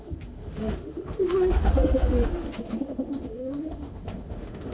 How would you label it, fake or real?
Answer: fake